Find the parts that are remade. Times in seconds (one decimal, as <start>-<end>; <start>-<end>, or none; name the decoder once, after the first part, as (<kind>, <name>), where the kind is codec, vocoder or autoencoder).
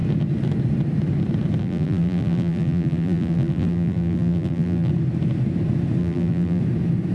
1.6-4.9 (vocoder, BigVGAN v2); 6.0-6.6